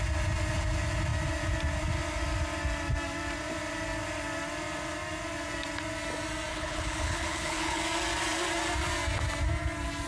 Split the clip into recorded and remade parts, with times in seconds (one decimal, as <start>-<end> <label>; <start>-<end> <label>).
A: 0.0-6.5 recorded; 6.5-7.8 remade; 7.8-10.1 recorded